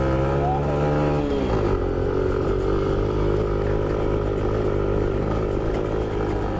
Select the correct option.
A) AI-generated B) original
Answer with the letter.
B